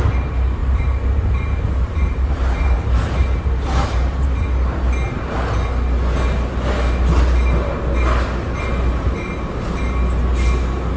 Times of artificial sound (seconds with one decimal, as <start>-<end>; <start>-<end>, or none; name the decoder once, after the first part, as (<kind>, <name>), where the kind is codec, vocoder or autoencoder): 0.6-4.4 (vocoder, BigVGAN v2)